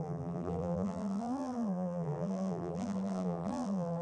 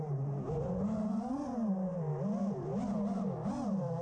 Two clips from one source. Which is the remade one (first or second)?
first